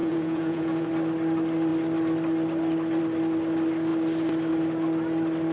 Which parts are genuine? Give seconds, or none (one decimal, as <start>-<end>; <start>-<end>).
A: 0.9-5.5